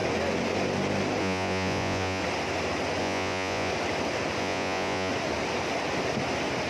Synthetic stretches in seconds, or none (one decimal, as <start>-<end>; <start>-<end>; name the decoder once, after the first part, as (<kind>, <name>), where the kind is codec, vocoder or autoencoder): 1.2-2.2 (vocoder, Vocos); 3.0-3.7; 4.4-5.1